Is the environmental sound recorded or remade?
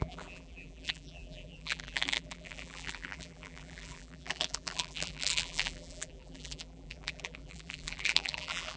remade